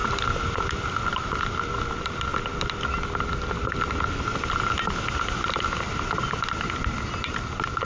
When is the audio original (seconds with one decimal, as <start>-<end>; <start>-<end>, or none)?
0.0-7.8